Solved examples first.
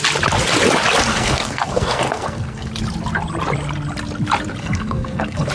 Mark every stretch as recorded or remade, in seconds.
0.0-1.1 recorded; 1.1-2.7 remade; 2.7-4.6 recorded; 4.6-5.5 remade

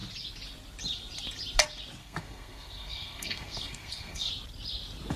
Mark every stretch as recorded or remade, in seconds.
0.0-2.0 recorded; 2.0-4.3 remade; 4.3-5.2 recorded

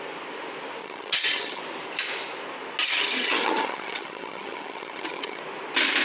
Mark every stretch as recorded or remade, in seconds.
0.0-0.8 recorded; 0.8-1.6 remade; 1.6-2.8 recorded; 2.8-5.4 remade; 5.4-6.0 recorded

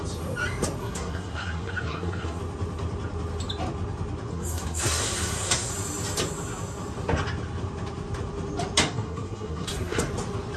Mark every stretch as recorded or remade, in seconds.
0.0-0.8 recorded; 0.8-2.4 remade; 2.4-4.3 recorded; 4.3-5.7 remade; 5.7-8.8 recorded; 8.8-10.0 remade; 10.0-10.6 recorded

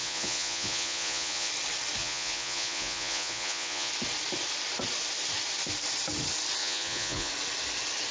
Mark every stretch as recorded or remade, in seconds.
0.0-1.5 remade; 1.5-2.0 recorded; 2.0-3.9 remade; 3.9-6.6 recorded; 6.6-7.3 remade; 7.3-8.1 recorded